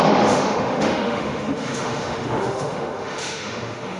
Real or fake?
fake